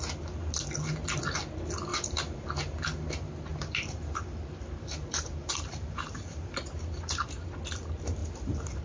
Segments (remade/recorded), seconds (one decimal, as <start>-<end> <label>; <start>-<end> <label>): 0.0-1.9 recorded; 1.9-2.5 remade; 2.5-3.5 recorded; 3.5-7.5 remade; 7.5-8.2 recorded; 8.2-8.8 remade